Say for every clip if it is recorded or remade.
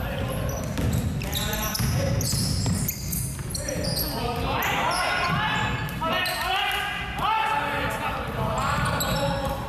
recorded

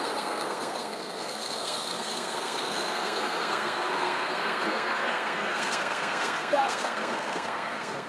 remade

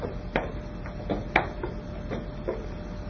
recorded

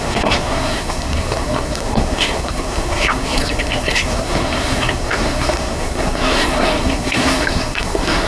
remade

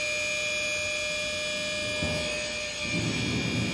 recorded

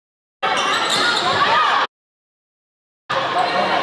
recorded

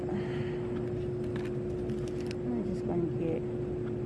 recorded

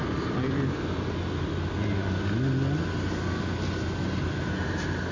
recorded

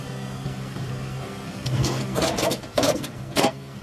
remade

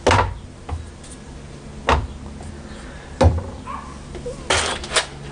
recorded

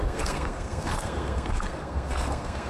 remade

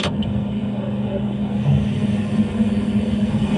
remade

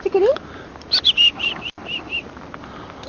recorded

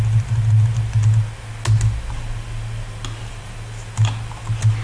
recorded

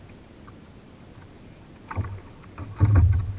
recorded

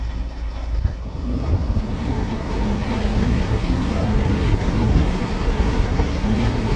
remade